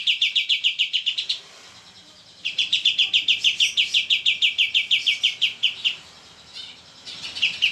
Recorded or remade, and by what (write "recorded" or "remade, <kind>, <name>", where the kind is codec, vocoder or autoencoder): recorded